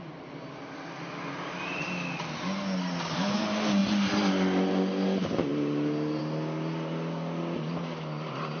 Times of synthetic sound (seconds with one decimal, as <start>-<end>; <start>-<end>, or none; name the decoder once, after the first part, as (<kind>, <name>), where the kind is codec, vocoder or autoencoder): none